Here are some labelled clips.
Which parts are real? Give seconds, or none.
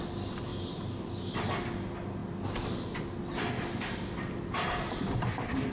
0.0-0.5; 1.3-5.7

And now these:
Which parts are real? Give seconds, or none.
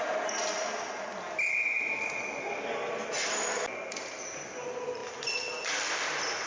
0.0-6.5